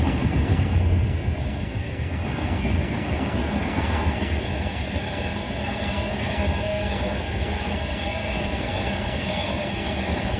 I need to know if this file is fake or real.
fake